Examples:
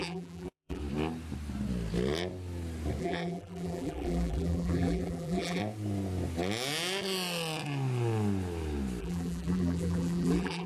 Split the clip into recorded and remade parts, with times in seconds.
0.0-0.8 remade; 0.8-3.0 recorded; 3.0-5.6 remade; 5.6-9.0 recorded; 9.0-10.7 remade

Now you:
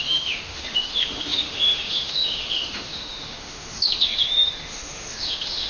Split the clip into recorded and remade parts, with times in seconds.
0.0-5.7 remade

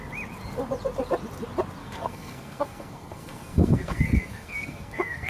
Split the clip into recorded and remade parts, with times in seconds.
0.0-1.8 recorded; 1.8-5.3 remade